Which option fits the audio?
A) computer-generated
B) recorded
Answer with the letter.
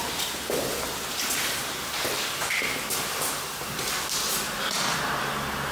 B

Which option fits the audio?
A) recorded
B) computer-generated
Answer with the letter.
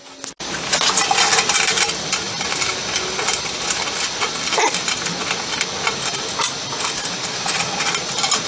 A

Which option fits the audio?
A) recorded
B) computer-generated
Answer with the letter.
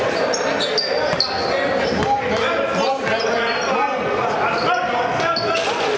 A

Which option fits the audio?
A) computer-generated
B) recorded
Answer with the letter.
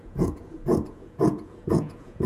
A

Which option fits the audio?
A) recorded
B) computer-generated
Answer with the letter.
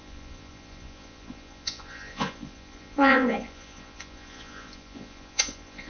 B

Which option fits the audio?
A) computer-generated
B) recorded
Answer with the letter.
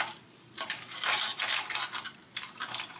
B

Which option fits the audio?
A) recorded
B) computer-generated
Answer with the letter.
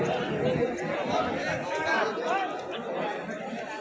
A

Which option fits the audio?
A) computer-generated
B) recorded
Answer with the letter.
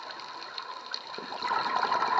B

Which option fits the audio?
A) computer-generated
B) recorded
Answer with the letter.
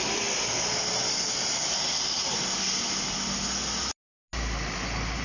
B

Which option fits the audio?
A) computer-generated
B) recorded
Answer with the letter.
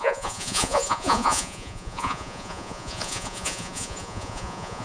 A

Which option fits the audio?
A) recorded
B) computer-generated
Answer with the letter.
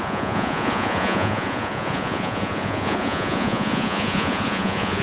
B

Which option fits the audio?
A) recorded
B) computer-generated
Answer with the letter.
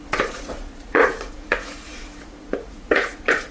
B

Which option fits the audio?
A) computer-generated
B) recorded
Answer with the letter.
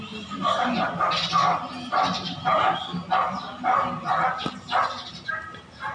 B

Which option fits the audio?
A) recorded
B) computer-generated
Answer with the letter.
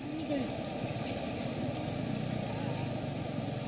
A